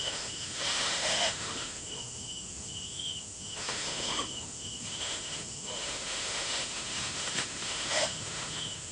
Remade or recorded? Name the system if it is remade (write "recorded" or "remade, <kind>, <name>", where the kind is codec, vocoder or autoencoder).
remade, autoencoder, DAC-VAE